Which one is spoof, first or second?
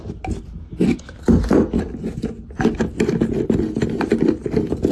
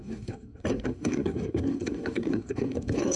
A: second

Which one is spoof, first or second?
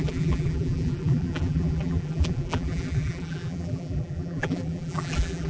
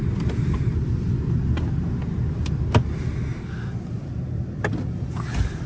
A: first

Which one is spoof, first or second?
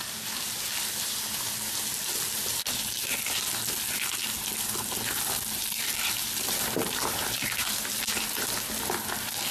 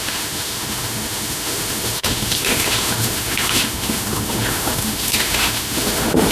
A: second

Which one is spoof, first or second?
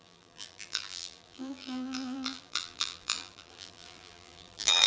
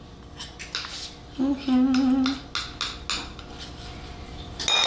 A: first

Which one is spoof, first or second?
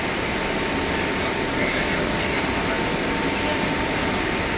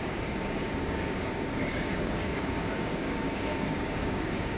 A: second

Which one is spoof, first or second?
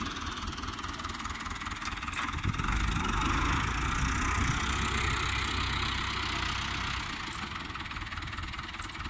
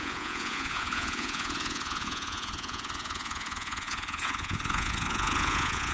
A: second